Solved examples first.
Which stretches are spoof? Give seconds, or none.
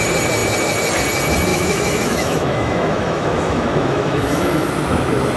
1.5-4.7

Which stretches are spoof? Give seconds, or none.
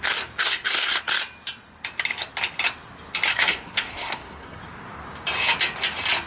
0.4-1.0; 3.3-4.6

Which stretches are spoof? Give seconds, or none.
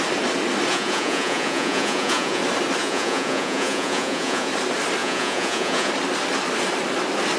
0.7-2.4; 2.8-4.5; 5.0-5.9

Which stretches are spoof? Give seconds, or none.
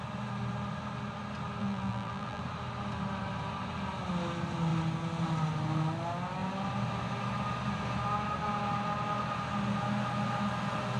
1.6-2.4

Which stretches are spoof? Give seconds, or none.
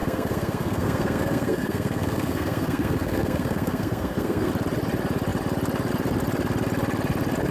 0.0-4.5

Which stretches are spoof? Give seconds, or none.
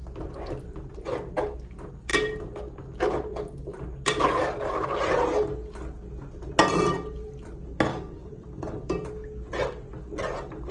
7.9-9.1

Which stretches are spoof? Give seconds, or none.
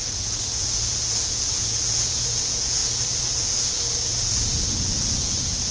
0.0-5.7